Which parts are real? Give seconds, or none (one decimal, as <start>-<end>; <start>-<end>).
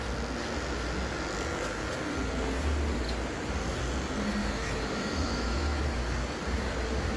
0.0-4.4; 5.8-7.2